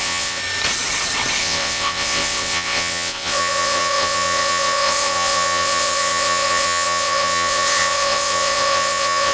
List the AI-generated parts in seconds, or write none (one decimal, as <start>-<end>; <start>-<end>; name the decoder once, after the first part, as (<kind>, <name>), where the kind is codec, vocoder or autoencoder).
0.0-0.4 (vocoder, WaveNeXt); 1.4-9.3